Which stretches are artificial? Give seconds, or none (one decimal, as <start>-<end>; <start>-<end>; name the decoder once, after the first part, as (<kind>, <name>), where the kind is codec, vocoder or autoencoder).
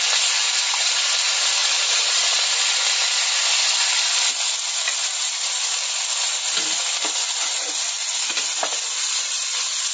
1.6-2.5 (vocoder, Vocos)